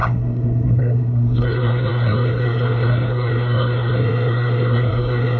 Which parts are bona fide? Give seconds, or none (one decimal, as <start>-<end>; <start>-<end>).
none